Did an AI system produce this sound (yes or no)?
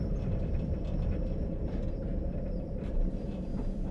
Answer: yes